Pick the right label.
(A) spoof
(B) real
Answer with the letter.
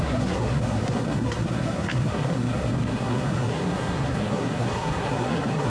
A